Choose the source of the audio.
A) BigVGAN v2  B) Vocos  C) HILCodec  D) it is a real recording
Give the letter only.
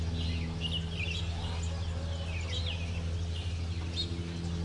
D